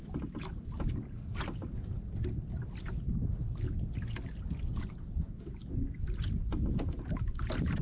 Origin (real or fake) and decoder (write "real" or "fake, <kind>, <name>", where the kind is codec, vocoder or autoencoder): real